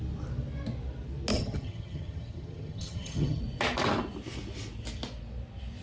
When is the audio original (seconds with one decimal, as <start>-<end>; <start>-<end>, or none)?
0.0-1.3; 3.4-5.8